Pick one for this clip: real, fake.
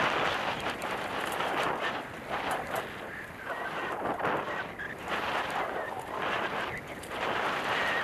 real